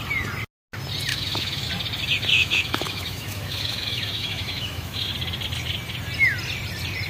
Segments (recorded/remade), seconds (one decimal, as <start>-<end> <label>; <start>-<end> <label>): 0.0-1.1 recorded; 1.1-1.7 remade; 1.7-2.3 recorded; 2.3-5.1 remade; 5.1-7.1 recorded